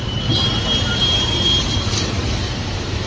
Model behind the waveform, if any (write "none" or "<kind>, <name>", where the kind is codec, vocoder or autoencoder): none